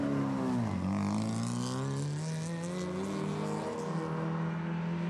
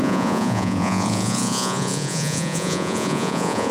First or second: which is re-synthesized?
second